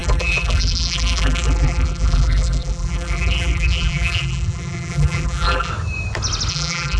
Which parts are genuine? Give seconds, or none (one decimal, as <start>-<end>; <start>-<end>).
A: 5.7-6.5